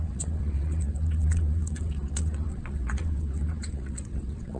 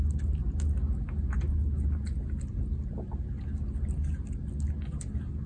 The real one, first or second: second